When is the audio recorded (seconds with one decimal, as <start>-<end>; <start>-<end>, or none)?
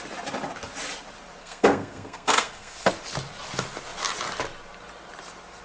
0.0-1.4; 2.9-5.6